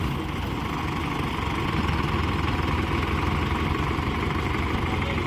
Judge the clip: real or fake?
real